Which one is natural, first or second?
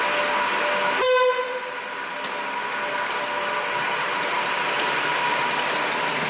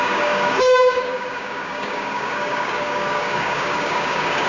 first